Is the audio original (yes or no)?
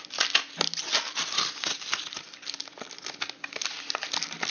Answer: yes